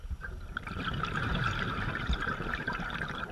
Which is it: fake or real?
fake